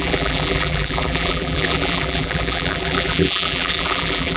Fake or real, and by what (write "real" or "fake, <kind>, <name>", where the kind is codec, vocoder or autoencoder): fake, vocoder, BigVGAN v2